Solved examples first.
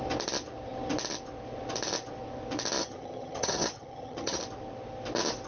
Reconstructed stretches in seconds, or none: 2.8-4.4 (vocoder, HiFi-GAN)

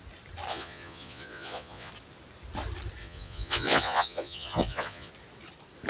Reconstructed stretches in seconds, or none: 0.5-1.9 (vocoder, Vocos); 3.0-5.1

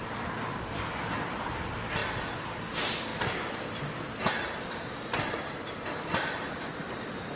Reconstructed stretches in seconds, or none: 2.0-2.7 (vocoder, BigVGAN v2); 3.1-6.9